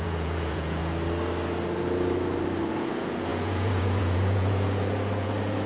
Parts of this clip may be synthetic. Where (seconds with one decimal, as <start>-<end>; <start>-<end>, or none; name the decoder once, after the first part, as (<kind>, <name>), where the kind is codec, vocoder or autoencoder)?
0.0-0.8 (vocoder, Vocos); 2.7-5.7